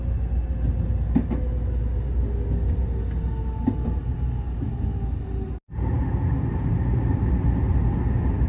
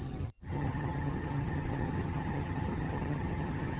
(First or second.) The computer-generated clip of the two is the second